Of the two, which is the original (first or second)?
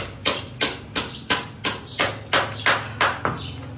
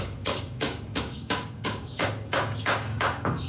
first